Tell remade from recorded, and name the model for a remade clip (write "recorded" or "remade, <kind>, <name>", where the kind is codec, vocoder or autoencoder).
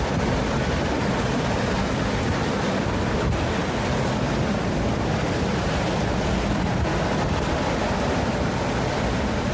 recorded